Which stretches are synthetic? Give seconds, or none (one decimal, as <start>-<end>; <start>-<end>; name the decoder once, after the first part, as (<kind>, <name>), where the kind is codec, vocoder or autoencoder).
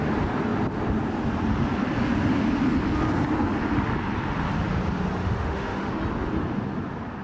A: 5.2-5.9 (autoencoder, DAC-VAE)